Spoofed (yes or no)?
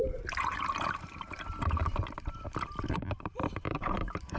yes